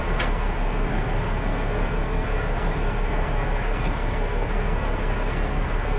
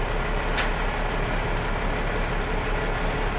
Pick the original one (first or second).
second